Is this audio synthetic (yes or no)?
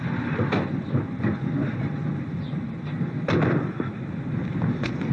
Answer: no